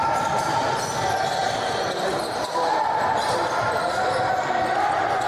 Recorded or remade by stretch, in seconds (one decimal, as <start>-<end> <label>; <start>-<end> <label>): 0.0-5.3 recorded